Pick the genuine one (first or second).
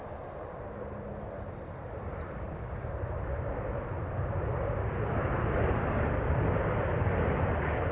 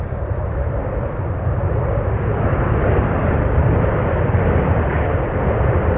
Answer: first